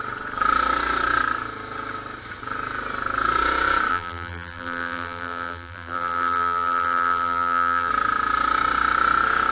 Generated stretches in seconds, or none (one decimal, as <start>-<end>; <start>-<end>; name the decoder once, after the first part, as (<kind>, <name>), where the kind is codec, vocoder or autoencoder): 3.9-7.9 (vocoder, BigVGAN v2)